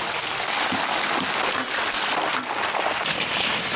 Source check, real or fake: real